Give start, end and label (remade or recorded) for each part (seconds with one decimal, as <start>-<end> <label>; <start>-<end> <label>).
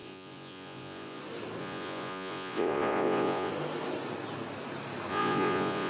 0.0-1.2 remade; 1.2-1.6 recorded; 1.6-3.5 remade; 3.5-5.1 recorded; 5.1-5.9 remade